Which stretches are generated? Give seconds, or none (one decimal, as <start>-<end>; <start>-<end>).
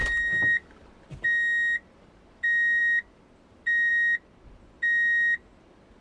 none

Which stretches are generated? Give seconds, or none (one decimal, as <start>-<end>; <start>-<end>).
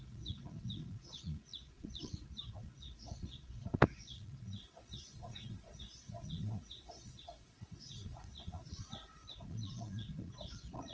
0.0-10.9